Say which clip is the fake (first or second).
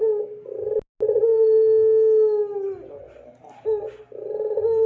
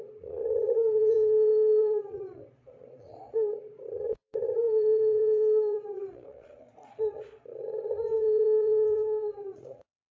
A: second